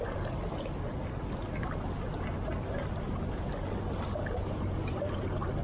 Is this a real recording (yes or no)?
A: yes